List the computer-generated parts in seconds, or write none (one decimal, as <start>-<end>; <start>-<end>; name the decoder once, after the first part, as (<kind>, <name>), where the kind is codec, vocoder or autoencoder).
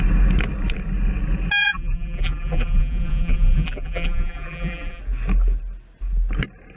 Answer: 1.6-5.0 (vocoder, BigVGAN v2)